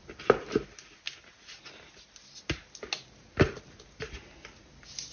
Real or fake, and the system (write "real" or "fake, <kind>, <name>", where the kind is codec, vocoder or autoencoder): real